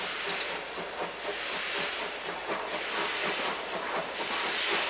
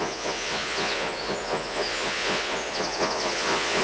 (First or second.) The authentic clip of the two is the first